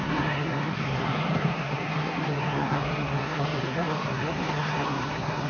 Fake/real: fake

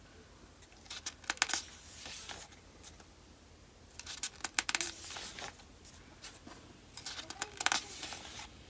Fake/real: real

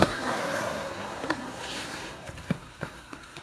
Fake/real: fake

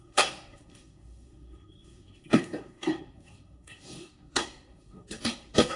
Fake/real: fake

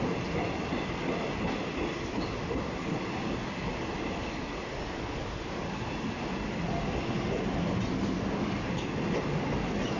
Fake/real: real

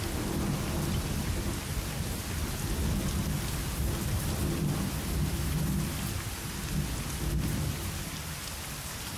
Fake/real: real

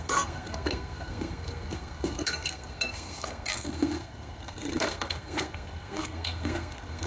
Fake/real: fake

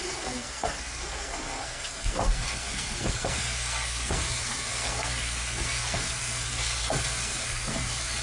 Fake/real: fake